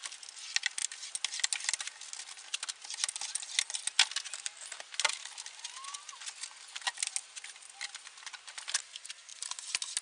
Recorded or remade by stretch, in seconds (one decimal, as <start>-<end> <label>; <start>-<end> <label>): 0.0-10.0 recorded